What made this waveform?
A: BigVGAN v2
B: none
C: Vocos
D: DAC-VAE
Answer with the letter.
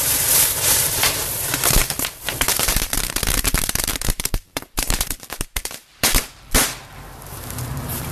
A